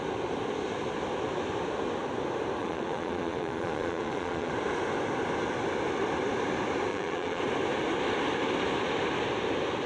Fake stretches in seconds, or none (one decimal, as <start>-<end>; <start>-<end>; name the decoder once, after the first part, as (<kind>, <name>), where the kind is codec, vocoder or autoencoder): 2.6-4.5 (vocoder, Vocos); 6.9-7.4